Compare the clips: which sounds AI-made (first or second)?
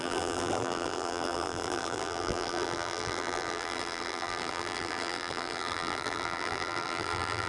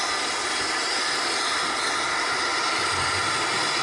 first